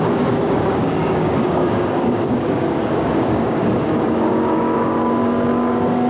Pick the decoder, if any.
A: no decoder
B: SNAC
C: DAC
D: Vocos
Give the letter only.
C